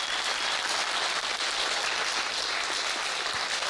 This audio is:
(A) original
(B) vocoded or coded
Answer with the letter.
A